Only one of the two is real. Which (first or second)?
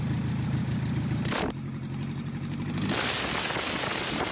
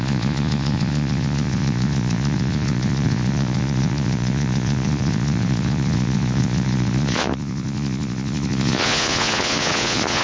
first